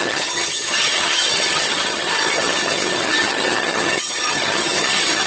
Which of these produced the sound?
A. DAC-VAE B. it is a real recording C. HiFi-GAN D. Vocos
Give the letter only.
C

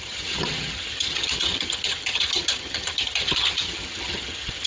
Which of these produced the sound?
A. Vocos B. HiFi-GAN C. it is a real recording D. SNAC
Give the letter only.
B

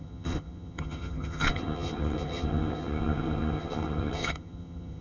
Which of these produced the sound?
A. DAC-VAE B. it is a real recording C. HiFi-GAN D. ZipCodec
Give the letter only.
C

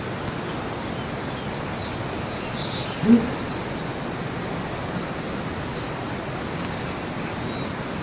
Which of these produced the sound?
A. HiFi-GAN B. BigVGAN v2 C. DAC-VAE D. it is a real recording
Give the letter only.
D